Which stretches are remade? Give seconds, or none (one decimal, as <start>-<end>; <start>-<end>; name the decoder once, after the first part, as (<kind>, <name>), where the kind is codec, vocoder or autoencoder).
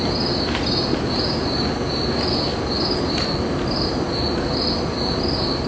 2.5-4.0 (vocoder, BigVGAN v2)